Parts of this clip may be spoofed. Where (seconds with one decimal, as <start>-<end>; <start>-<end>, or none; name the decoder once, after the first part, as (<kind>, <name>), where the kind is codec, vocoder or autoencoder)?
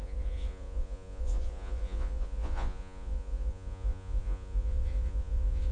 0.0-5.7 (vocoder, Vocos)